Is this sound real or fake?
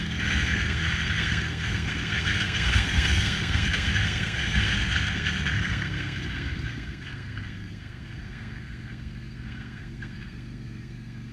fake